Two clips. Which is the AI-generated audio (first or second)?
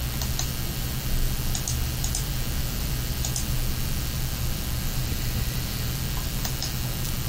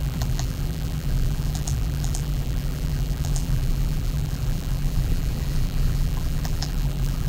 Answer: second